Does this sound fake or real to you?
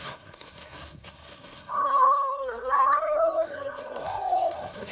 fake